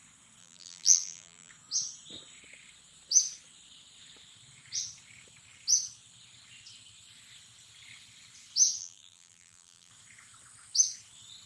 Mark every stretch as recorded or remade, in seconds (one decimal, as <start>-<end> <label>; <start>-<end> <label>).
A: 0.0-0.4 recorded; 0.4-1.5 remade; 1.5-8.8 recorded; 8.8-9.9 remade; 9.9-11.5 recorded